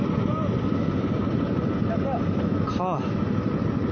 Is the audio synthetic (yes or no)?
no